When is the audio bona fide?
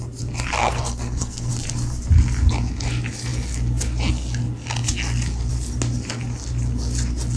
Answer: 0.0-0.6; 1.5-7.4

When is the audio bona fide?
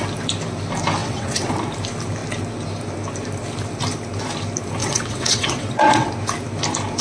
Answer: 0.0-1.0; 1.5-4.8; 6.1-7.0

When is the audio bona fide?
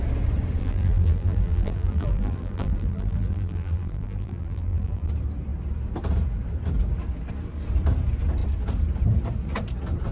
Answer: 0.0-0.6; 5.1-10.1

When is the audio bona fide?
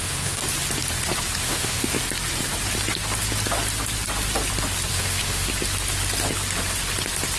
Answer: 0.4-1.4; 1.9-4.9; 5.5-7.4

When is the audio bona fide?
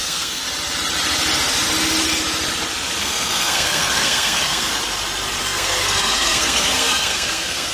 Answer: 0.4-3.0; 4.7-5.4